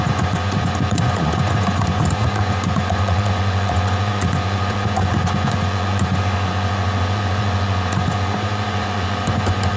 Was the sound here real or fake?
fake